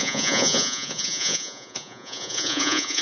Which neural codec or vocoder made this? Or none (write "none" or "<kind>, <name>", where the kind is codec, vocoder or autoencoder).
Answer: vocoder, Vocos